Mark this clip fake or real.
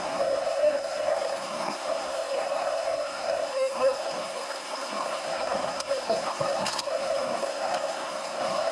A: fake